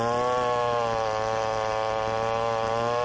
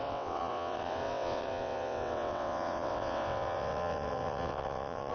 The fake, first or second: second